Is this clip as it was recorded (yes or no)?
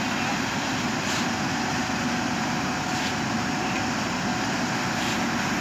yes